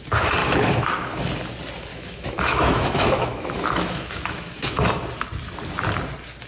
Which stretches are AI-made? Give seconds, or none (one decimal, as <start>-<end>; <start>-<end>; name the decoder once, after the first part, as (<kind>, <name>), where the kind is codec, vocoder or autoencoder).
0.4-1.2 (autoencoder, DAC-VAE); 1.9-4.7